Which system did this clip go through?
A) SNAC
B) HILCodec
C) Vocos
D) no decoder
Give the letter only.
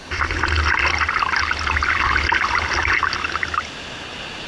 D